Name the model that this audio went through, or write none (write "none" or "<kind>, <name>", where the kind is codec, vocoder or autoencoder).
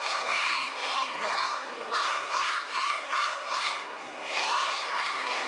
codec, SNAC